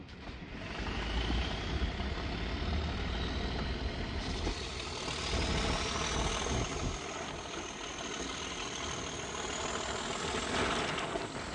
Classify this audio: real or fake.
real